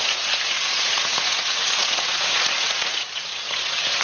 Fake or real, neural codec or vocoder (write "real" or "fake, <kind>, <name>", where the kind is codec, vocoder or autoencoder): fake, vocoder, Vocos